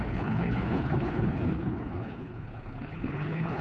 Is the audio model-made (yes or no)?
yes